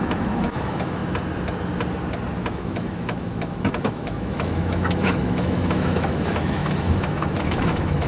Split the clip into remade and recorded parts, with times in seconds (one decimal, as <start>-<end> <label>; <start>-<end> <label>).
0.0-1.0 remade; 1.0-2.5 recorded; 2.5-8.1 remade